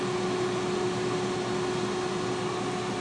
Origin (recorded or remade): recorded